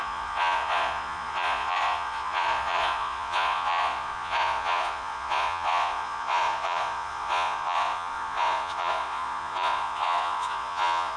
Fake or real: fake